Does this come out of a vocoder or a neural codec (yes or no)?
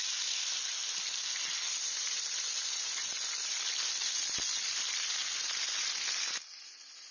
no